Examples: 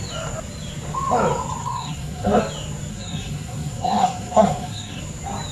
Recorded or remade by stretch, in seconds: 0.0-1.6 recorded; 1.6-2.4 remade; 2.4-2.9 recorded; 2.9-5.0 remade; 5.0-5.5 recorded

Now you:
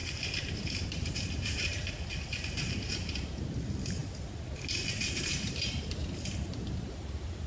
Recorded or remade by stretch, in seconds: 0.0-4.0 remade; 4.0-5.2 recorded; 5.2-7.5 remade

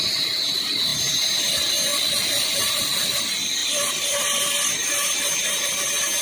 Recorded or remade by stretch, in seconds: 0.0-1.9 recorded; 1.9-3.2 remade; 3.2-3.6 recorded; 3.6-5.2 remade; 5.2-6.2 recorded

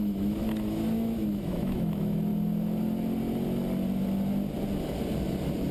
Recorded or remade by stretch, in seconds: 0.0-2.3 remade; 2.3-5.7 recorded

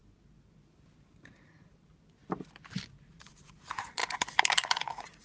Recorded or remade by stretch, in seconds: 0.0-3.1 recorded; 3.1-4.0 remade; 4.0-4.7 recorded; 4.7-5.2 remade

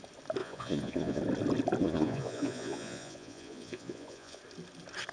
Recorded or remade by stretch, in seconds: 0.0-0.4 recorded; 0.4-1.2 remade; 1.2-1.8 recorded; 1.8-4.4 remade; 4.4-5.1 recorded

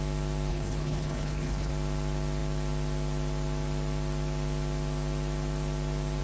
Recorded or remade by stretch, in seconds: 0.0-0.5 recorded; 0.5-1.7 remade; 1.7-6.2 recorded